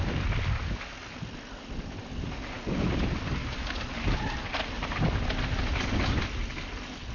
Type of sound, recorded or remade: recorded